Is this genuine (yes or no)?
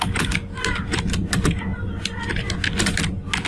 yes